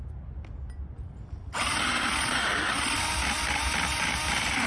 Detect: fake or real real